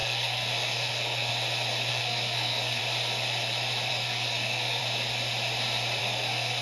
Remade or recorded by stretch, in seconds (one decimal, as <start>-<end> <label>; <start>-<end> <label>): 0.0-1.3 remade; 1.3-1.9 recorded; 1.9-2.8 remade; 2.8-3.9 recorded; 3.9-4.8 remade; 4.8-6.0 recorded; 6.0-6.6 remade